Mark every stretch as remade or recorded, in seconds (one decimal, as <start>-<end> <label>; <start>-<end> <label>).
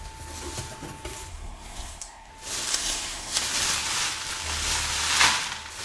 0.0-1.3 recorded; 1.3-2.3 remade; 2.3-2.7 recorded; 2.7-3.4 remade; 3.4-5.8 recorded